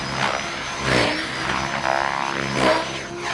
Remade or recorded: recorded